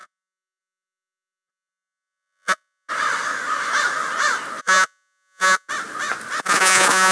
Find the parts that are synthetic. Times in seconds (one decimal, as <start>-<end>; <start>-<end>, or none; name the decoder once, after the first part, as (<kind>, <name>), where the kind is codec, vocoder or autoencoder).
0.0-2.9 (vocoder, Vocos); 4.6-5.7; 6.4-7.1